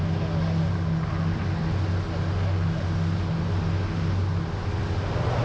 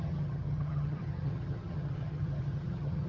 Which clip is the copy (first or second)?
second